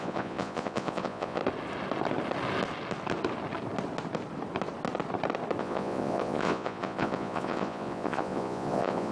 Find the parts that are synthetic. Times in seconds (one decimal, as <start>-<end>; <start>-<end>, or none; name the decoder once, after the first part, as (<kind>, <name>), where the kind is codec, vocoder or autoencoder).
0.0-1.4 (vocoder, Vocos); 5.6-9.1